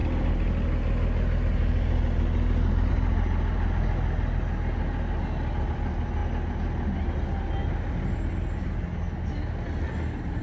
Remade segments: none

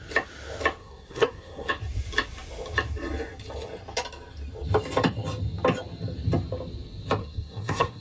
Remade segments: 0.8-1.7 (codec, SNAC); 7.2-8.0

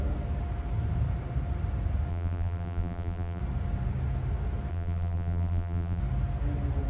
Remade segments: 2.1-3.4 (vocoder, BigVGAN v2); 4.7-6.0

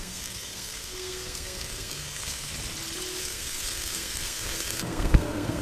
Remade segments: 0.0-2.5 (codec, SNAC); 3.2-5.6

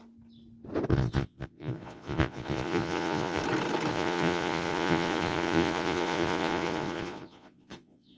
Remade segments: 0.9-3.4 (vocoder, Vocos); 3.9-8.2

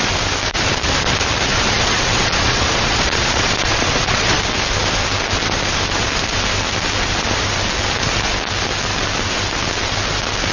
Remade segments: 1.5-4.4 (vocoder, Vocos)

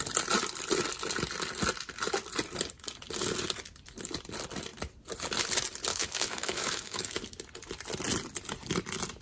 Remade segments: 5.9-7.2 (autoencoder, DAC-VAE)

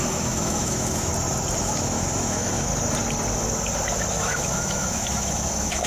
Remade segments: 0.0-1.1 (autoencoder, DAC-VAE); 1.6-2.7; 4.1-5.9